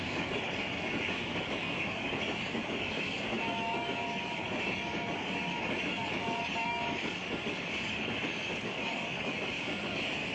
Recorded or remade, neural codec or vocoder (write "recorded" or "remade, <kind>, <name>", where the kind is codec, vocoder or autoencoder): remade, codec, DAC